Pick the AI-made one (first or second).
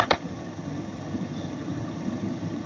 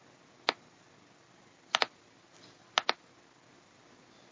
first